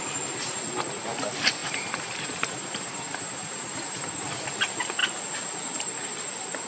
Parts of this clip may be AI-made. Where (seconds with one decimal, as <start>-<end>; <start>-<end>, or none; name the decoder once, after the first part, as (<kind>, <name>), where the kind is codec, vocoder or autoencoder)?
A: 1.6-4.1 (vocoder, BigVGAN v2)